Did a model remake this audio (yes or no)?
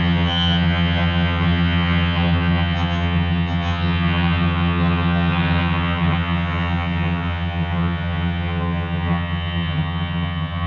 yes